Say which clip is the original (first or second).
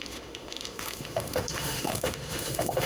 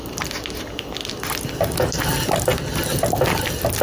second